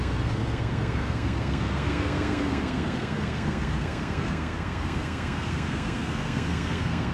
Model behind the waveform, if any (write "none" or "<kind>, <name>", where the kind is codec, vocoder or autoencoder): codec, SNAC